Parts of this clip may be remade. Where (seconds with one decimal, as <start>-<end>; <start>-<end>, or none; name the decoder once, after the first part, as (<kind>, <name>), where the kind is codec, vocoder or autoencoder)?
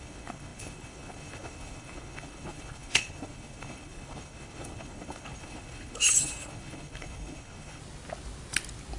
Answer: 0.0-7.8 (codec, HILCodec)